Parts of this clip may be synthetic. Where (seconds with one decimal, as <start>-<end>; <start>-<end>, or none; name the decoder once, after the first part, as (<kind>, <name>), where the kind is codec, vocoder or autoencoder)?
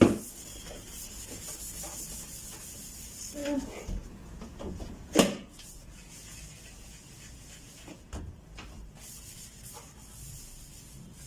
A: 3.4-8.3 (vocoder, Vocos)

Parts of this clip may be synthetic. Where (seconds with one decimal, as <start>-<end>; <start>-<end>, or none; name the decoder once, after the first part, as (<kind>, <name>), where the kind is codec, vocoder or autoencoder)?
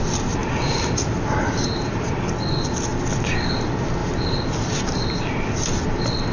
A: 0.4-2.1 (vocoder, BigVGAN v2); 4.0-4.5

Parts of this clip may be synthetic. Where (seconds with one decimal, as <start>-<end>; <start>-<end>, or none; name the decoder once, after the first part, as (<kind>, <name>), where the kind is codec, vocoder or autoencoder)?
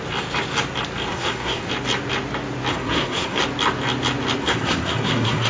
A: 1.1-1.7 (codec, SNAC); 2.7-3.4; 4.4-5.5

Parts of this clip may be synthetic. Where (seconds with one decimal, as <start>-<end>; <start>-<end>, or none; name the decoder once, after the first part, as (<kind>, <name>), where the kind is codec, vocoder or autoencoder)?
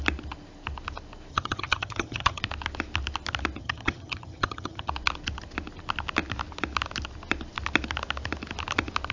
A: 1.3-2.4 (vocoder, HiFi-GAN); 3.6-4.9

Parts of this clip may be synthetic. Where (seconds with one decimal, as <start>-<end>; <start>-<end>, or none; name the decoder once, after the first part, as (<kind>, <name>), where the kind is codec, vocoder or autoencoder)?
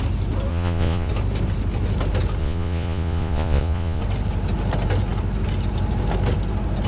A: 0.5-1.1 (vocoder, Vocos); 2.4-4.0